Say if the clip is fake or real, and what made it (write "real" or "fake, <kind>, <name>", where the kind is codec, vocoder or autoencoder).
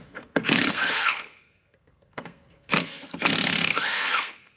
fake, codec, SNAC